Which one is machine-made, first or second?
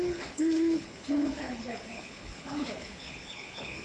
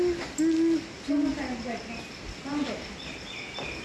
first